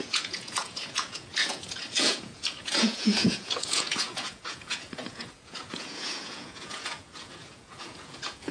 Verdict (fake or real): fake